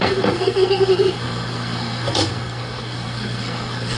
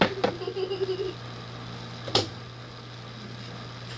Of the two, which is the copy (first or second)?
first